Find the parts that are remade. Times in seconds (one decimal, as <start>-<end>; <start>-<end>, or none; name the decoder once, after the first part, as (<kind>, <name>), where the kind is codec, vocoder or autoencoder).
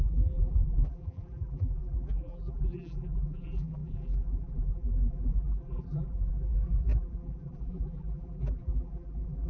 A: 0.0-9.5 (vocoder, BigVGAN v2)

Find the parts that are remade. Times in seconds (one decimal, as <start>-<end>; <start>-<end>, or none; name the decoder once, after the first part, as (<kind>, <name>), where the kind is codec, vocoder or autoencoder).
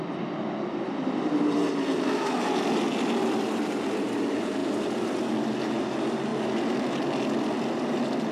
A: 4.6-5.3 (vocoder, BigVGAN v2)